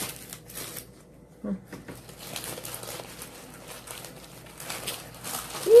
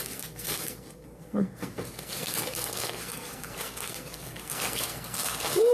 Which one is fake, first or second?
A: second